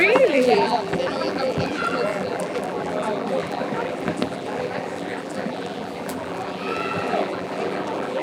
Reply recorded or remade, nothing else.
remade